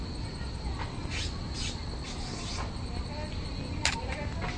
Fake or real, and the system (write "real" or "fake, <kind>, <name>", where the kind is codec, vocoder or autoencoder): real